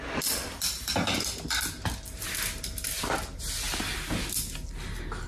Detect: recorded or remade recorded